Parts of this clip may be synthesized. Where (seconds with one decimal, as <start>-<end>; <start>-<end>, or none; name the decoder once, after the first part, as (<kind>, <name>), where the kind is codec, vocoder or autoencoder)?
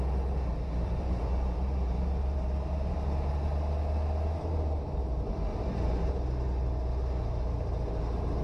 0.5-2.9 (vocoder, BigVGAN v2); 5.5-6.1